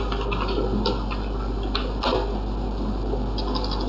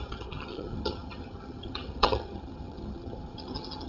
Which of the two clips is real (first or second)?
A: first